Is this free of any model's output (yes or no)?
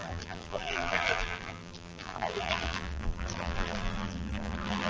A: no